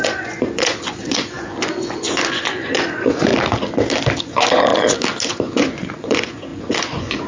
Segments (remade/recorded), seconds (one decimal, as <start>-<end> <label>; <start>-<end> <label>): 0.0-3.3 remade; 3.3-4.2 recorded; 4.2-4.7 remade; 4.7-5.3 recorded; 5.3-7.3 remade